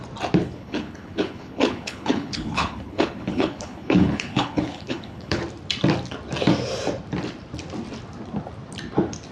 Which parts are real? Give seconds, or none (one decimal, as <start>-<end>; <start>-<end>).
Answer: 0.0-0.4; 5.4-9.3